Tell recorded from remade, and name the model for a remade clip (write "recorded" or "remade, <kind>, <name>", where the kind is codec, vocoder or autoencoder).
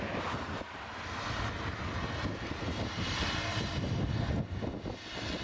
recorded